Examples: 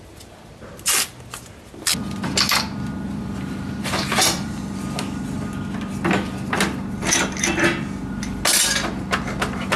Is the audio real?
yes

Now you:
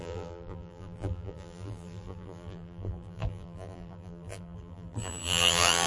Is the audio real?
no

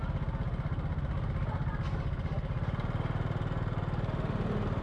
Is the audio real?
yes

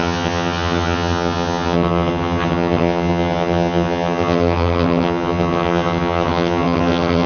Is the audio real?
no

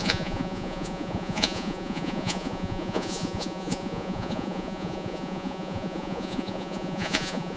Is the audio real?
no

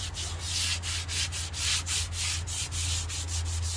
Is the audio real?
yes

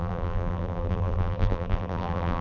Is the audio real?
no